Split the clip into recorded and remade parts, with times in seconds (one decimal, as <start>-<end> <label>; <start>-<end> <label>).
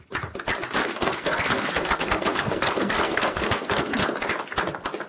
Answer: 0.0-0.8 recorded; 0.8-3.9 remade; 3.9-5.1 recorded